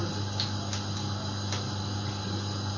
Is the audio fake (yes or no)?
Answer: no